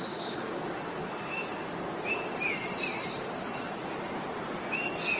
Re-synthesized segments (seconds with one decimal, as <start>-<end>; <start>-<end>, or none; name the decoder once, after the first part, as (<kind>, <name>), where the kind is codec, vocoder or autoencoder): 1.0-4.1 (vocoder, BigVGAN v2)